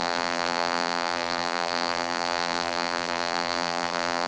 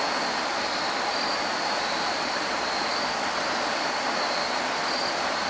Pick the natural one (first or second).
second